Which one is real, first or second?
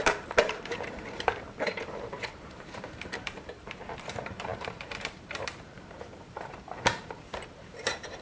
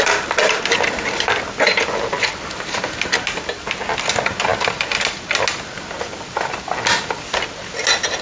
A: second